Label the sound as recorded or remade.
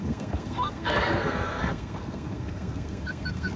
remade